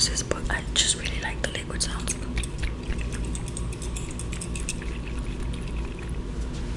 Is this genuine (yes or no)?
yes